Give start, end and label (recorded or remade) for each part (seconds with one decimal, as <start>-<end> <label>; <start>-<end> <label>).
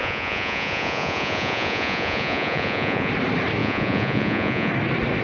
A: 0.0-3.1 remade; 3.1-3.6 recorded; 3.6-4.7 remade; 4.7-5.2 recorded